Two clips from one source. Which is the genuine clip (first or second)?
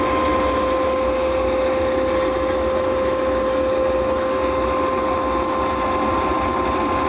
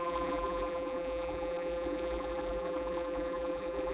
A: first